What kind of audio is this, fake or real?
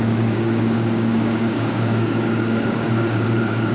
fake